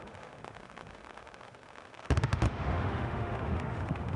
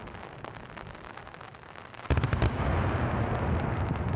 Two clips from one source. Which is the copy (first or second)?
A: first